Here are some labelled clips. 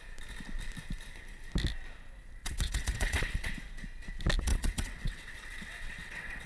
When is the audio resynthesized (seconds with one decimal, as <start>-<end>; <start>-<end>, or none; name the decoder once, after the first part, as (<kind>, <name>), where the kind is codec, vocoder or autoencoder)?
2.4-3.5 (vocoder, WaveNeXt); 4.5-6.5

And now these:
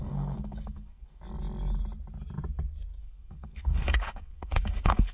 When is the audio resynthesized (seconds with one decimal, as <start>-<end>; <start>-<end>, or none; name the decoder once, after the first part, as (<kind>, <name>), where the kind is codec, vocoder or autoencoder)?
0.0-1.2 (codec, SNAC); 3.0-5.1

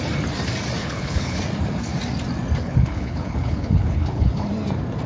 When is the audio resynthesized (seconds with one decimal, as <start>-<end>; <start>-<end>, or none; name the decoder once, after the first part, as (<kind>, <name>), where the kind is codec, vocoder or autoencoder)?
0.8-1.4 (codec, HILCodec); 2.6-4.5